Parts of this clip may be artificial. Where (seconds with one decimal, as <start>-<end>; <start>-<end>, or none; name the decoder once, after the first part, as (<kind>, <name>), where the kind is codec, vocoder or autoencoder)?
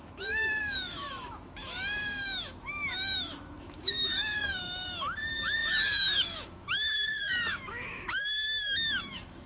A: 0.0-9.5 (autoencoder, DAC-VAE)